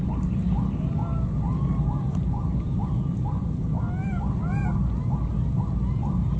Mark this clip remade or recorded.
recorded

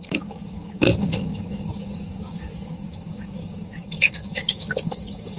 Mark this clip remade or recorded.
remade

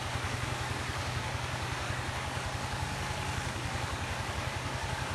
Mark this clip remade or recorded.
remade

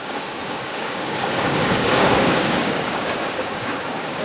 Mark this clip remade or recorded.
remade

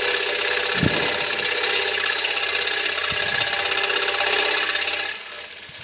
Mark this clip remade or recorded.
recorded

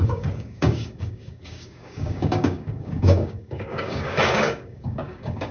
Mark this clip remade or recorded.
remade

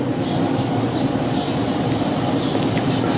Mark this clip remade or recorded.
recorded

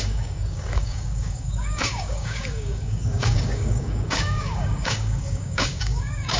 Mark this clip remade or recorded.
remade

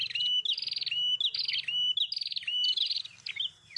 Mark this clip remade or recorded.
recorded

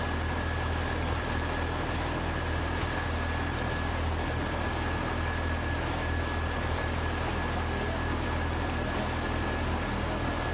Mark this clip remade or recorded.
recorded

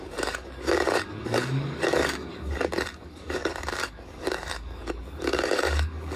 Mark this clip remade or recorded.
remade